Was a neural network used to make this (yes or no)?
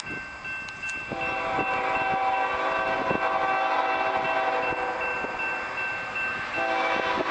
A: no